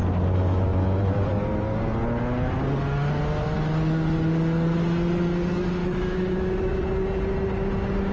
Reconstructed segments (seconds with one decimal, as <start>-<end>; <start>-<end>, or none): 5.8-6.8

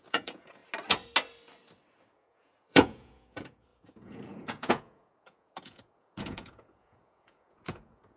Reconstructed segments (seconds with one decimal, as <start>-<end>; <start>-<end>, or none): 0.0-0.6; 2.1-8.2

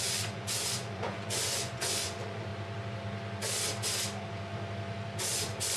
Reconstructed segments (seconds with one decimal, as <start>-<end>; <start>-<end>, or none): 0.0-2.5; 5.3-5.8